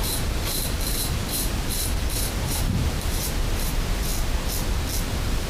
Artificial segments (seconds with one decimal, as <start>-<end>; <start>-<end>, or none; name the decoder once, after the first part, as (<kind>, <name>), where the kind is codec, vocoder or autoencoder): 0.0-4.1 (vocoder, BigVGAN v2); 5.1-5.5